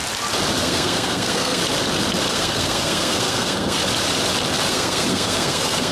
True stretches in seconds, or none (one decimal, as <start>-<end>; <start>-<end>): 0.0-0.6; 1.6-2.3; 3.8-4.7